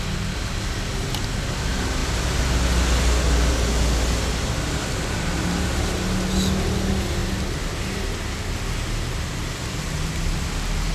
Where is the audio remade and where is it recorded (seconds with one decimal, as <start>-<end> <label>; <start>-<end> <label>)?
0.0-10.9 recorded

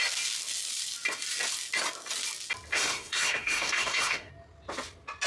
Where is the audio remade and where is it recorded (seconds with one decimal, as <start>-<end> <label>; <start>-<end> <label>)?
0.0-2.7 recorded; 2.7-4.3 remade; 4.3-5.3 recorded

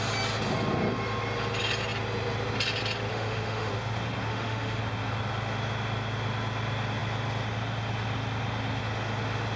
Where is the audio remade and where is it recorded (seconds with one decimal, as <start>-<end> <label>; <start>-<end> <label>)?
0.0-3.1 recorded; 3.1-3.7 remade; 3.7-4.3 recorded; 4.3-4.8 remade; 4.8-9.6 recorded

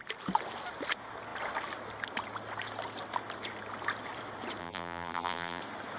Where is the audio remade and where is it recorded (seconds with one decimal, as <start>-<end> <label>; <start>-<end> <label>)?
0.0-4.6 recorded; 4.6-5.6 remade; 5.6-6.0 recorded